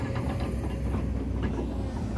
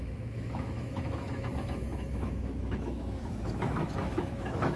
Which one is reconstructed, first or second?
second